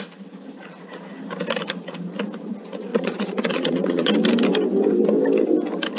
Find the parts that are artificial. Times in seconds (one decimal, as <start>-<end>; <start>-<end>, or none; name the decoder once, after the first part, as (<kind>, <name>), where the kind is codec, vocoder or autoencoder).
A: 2.9-4.1 (vocoder, Vocos)